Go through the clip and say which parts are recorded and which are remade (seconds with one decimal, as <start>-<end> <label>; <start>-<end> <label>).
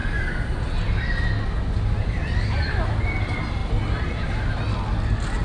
0.0-5.4 recorded